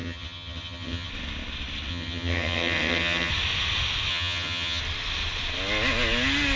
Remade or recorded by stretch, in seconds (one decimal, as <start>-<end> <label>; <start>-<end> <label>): 0.0-1.1 remade; 1.1-1.9 recorded; 1.9-3.3 remade; 3.3-4.1 recorded; 4.1-4.8 remade; 4.8-6.6 recorded